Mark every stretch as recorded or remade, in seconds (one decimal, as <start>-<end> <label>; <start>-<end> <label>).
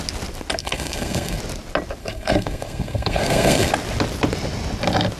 0.0-0.6 recorded; 0.6-1.4 remade; 1.4-2.0 recorded; 2.0-3.7 remade; 3.7-5.2 recorded